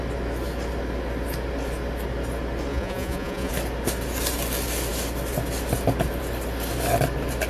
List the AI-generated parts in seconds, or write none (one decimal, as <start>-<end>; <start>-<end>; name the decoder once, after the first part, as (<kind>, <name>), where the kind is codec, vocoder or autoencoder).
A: 2.7-3.5 (vocoder, Vocos)